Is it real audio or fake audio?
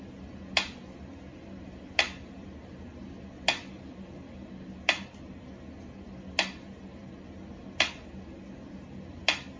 real